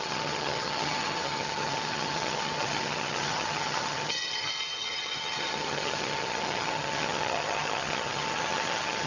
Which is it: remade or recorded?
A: remade